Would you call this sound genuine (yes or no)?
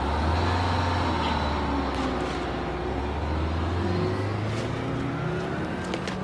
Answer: yes